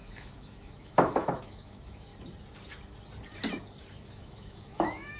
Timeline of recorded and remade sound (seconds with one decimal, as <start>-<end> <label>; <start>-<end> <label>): 0.0-2.1 remade; 2.1-3.9 recorded; 3.9-5.2 remade